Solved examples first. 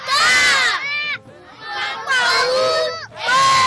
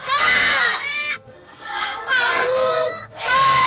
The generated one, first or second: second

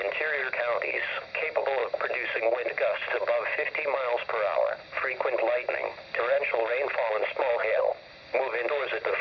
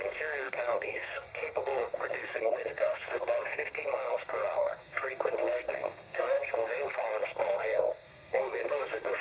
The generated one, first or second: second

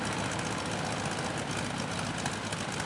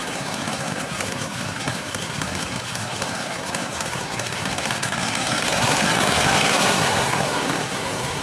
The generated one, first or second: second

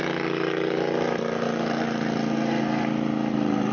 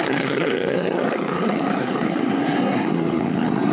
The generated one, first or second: second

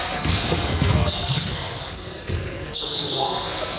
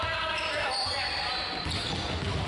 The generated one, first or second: first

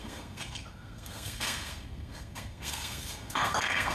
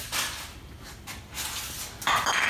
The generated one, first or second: first